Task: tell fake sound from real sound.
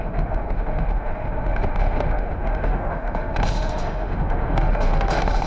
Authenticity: fake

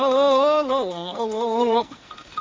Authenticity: fake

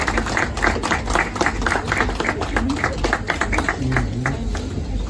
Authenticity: real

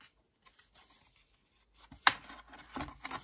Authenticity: real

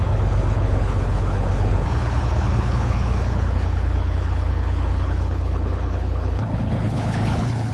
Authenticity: fake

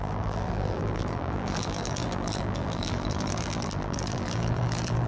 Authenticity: fake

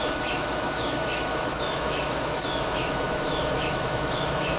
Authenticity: fake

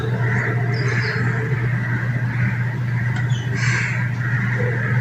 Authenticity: fake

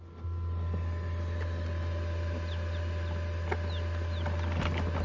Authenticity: real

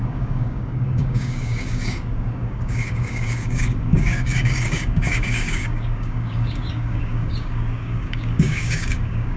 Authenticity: fake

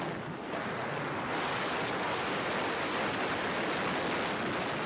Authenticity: real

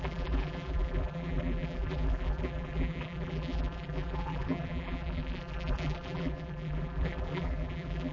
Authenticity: fake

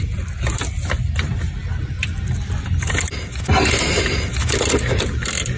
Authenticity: real